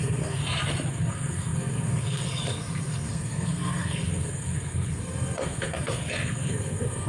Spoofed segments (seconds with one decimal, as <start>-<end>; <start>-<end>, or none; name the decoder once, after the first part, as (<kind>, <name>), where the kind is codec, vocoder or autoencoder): 0.0-0.4 (codec, SNAC); 0.9-7.1